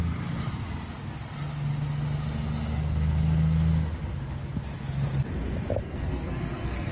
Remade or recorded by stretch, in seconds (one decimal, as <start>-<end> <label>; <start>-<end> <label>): 0.0-5.8 recorded; 5.8-6.9 remade